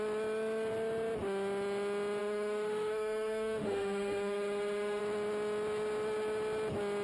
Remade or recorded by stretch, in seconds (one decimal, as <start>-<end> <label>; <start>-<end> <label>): 0.0-2.2 recorded; 2.2-5.0 remade; 5.0-7.0 recorded